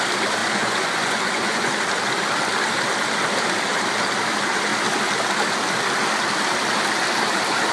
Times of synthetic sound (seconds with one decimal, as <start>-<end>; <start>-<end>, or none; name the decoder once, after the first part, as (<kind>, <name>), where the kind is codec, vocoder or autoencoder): 0.4-1.7 (vocoder, Vocos)